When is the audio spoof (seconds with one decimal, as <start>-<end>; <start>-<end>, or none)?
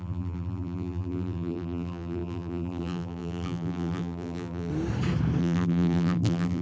0.0-4.7; 5.4-6.6